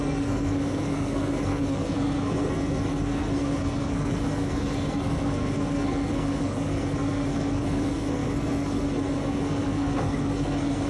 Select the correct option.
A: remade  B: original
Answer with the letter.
A